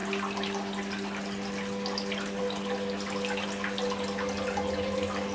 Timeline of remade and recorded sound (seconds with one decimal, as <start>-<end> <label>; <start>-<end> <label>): 0.0-5.3 recorded